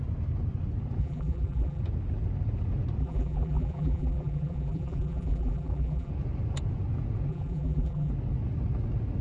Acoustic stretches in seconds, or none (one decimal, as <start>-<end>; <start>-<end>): 0.0-1.0; 1.8-3.0; 6.1-7.3; 8.1-9.2